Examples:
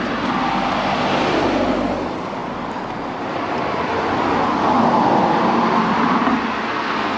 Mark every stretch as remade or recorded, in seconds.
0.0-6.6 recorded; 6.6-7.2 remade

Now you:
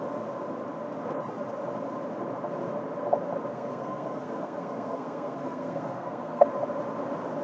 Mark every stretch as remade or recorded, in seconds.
0.0-3.5 recorded; 3.5-6.5 remade; 6.5-7.4 recorded